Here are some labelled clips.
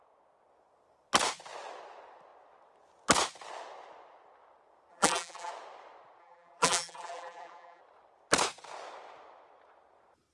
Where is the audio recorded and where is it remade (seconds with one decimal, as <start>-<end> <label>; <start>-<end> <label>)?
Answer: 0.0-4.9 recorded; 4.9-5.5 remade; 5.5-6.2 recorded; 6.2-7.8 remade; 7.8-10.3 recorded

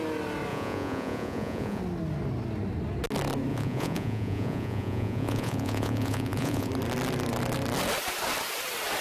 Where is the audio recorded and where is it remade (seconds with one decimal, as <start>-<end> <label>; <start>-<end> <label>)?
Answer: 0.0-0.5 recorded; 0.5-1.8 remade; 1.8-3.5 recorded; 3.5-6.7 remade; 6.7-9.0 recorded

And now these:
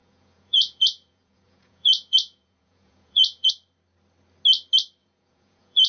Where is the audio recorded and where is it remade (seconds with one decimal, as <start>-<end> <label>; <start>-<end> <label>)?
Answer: 0.0-3.5 remade; 3.5-5.0 recorded; 5.0-5.9 remade

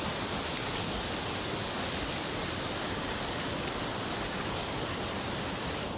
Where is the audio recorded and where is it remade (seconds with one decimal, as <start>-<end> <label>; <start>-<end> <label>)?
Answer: 0.0-6.0 recorded

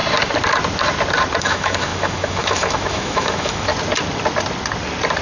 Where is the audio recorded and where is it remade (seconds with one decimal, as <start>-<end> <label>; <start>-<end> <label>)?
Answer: 0.0-1.4 recorded; 1.4-3.7 remade; 3.7-5.2 recorded

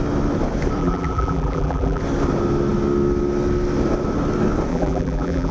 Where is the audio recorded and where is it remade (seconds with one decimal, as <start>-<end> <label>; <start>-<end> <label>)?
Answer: 0.0-0.8 recorded; 0.8-2.0 remade; 2.0-4.7 recorded; 4.7-5.5 remade

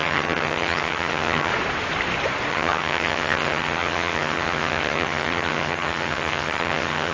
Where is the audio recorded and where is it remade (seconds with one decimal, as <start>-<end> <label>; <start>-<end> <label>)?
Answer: 0.0-1.5 remade; 1.5-2.5 recorded; 2.5-7.1 remade